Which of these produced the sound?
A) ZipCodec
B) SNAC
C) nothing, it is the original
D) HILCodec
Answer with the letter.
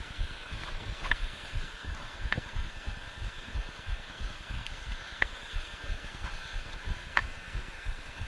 B